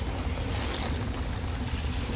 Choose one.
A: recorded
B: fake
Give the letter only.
A